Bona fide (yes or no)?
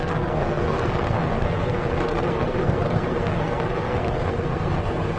no